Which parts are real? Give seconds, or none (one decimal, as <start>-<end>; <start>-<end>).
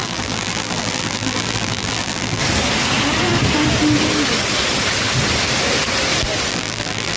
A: 2.4-6.5